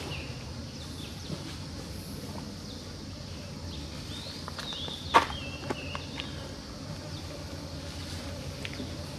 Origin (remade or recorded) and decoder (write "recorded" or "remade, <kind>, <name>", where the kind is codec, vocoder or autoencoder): recorded